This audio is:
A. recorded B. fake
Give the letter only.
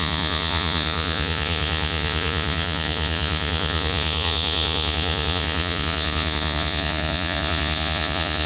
B